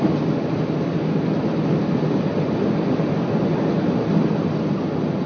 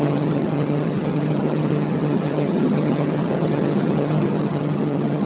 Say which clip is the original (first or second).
first